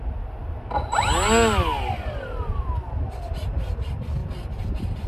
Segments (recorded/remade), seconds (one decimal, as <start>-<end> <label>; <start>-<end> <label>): 0.0-5.1 recorded